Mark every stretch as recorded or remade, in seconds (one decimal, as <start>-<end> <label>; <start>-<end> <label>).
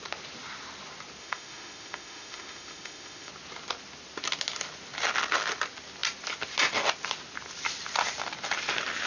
0.0-1.2 recorded; 1.2-3.3 remade; 3.3-9.1 recorded